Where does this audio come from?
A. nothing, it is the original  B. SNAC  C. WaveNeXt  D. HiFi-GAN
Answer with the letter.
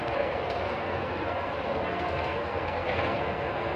B